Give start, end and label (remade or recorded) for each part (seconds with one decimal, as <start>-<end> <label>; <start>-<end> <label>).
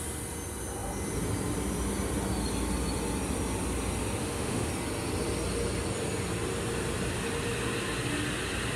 0.0-4.2 recorded; 4.2-4.7 remade; 4.7-8.8 recorded